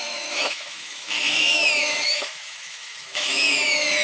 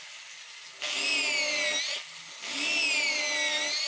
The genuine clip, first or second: second